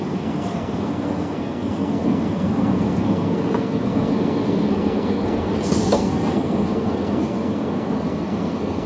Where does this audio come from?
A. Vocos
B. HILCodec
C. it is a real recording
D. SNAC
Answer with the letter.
D